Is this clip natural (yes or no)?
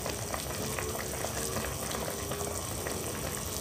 yes